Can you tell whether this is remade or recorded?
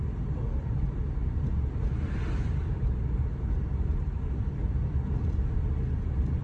remade